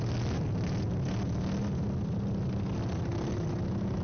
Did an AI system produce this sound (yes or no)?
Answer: no